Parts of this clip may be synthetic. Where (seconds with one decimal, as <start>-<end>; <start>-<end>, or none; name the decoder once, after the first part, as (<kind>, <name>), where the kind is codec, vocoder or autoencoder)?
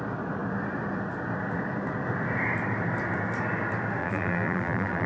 4.0-5.1 (vocoder, BigVGAN v2)